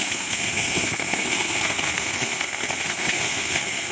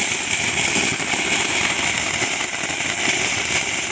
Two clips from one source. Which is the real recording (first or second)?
second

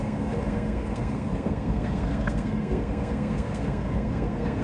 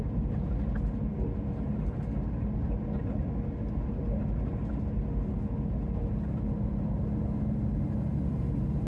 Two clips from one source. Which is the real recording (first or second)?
second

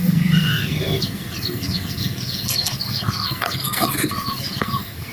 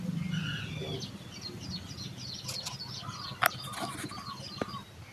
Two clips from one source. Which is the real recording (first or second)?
second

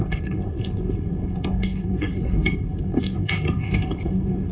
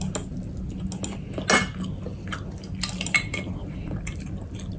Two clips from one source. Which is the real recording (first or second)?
second